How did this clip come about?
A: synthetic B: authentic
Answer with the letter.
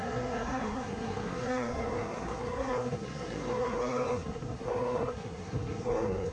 A